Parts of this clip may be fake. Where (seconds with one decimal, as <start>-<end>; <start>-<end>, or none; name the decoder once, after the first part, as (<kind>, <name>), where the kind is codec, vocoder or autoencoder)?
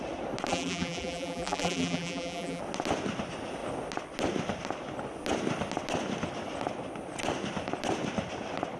0.5-2.6 (vocoder, BigVGAN v2)